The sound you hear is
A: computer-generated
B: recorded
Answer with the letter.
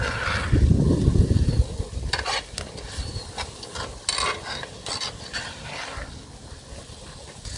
B